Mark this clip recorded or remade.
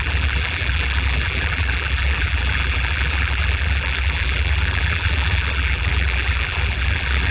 remade